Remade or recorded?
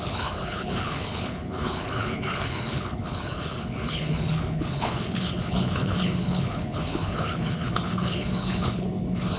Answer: remade